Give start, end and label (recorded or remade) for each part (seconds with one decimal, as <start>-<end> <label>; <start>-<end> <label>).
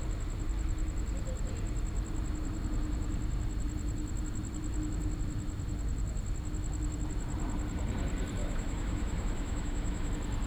0.0-8.4 recorded; 8.4-10.1 remade; 10.1-10.5 recorded